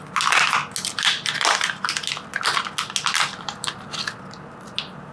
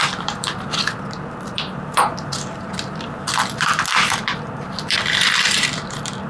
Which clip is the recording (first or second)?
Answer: first